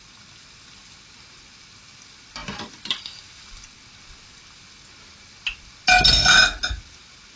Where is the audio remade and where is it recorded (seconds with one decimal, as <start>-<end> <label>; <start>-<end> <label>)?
0.0-7.4 recorded